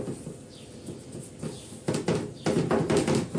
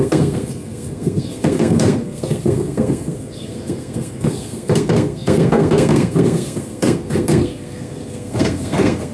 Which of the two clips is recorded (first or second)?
first